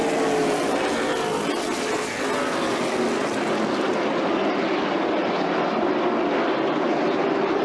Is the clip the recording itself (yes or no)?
yes